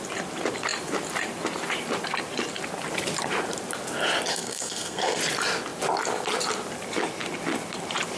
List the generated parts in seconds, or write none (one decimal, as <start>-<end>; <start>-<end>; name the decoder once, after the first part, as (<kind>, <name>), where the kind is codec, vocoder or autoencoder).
4.3-5.2 (codec, SNAC)